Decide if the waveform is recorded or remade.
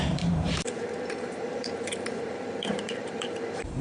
remade